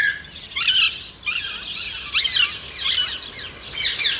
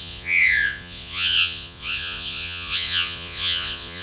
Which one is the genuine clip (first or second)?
first